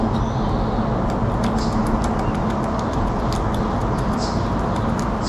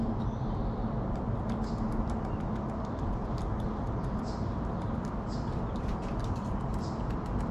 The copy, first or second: second